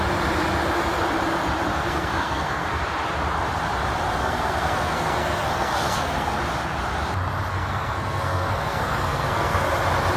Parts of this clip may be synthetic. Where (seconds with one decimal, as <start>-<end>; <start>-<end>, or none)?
1.7-2.8; 4.2-6.4; 7.5-9.7